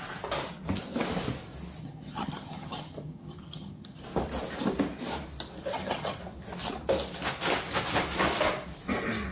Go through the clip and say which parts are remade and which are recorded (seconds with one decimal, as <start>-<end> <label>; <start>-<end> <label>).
0.0-1.8 recorded; 1.8-4.0 remade; 4.0-5.7 recorded; 5.7-6.2 remade; 6.2-9.3 recorded